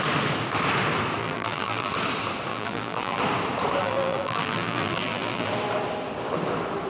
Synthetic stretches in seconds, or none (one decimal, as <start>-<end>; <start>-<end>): 1.2-1.9; 2.5-3.2; 3.8-5.5